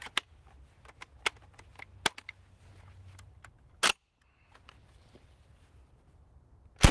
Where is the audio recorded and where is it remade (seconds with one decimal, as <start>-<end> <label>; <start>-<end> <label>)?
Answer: 0.0-6.9 recorded